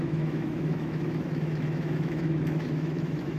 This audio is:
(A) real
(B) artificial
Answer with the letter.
B